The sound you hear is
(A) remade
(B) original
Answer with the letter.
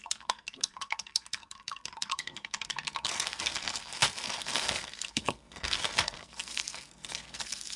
A